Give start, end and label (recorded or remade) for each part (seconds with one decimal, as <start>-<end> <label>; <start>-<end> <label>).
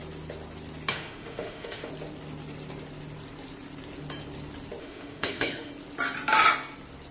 0.0-0.9 recorded; 0.9-1.9 remade; 1.9-4.8 recorded; 4.8-5.7 remade; 5.7-7.1 recorded